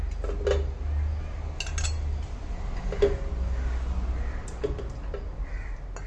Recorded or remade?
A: recorded